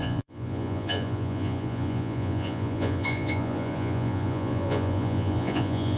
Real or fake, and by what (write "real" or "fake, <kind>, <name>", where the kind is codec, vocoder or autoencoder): fake, vocoder, Vocos